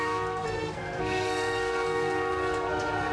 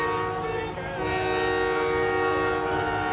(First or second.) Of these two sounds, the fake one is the first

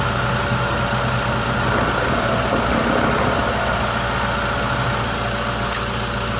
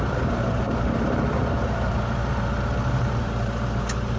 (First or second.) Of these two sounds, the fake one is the second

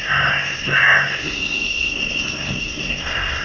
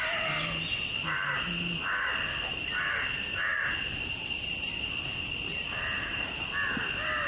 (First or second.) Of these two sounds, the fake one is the first